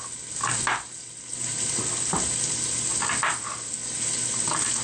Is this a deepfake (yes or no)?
no